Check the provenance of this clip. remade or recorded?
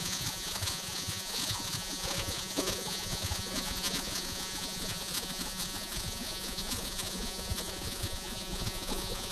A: remade